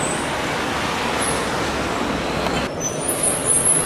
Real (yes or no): yes